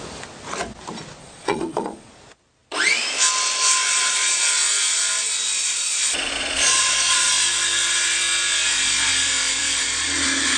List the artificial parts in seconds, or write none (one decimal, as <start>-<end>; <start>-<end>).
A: 1.2-2.1; 5.6-7.3

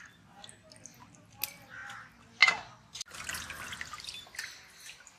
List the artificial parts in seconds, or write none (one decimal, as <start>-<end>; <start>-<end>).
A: none